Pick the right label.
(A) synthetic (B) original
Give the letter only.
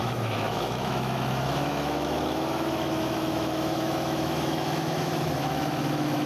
A